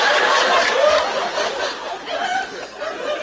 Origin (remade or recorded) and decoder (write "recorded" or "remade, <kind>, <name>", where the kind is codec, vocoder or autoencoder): recorded